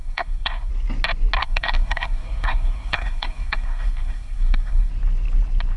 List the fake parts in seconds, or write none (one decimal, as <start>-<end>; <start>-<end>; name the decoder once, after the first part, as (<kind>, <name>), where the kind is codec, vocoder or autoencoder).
0.0-0.7 (codec, SNAC); 1.4-4.9